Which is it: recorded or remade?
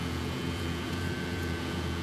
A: remade